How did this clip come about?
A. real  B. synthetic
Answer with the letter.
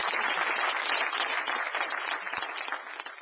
A